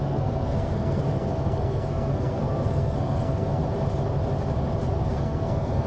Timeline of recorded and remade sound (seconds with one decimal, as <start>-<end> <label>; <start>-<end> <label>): 0.0-3.6 remade; 3.6-5.0 recorded; 5.0-5.9 remade